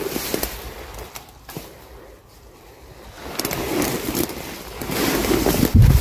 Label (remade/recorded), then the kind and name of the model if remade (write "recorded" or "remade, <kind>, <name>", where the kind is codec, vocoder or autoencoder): recorded